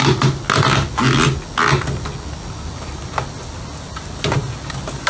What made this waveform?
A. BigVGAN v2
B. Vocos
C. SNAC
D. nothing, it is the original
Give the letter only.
D